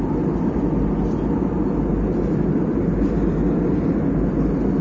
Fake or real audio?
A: real